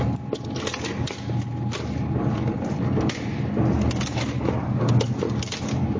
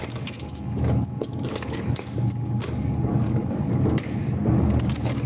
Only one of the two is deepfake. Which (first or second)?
second